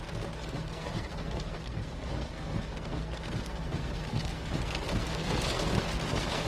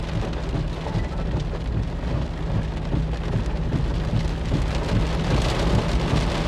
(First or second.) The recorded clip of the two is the second